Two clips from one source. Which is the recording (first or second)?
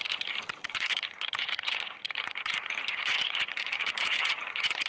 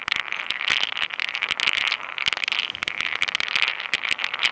second